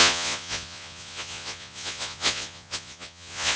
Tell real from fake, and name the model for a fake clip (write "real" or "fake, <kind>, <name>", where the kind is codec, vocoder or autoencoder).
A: fake, vocoder, Vocos